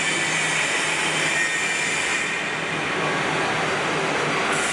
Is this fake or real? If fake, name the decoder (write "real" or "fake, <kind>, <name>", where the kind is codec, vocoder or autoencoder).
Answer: real